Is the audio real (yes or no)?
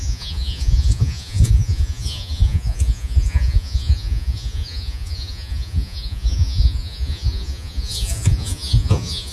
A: no